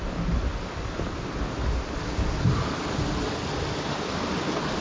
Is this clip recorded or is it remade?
recorded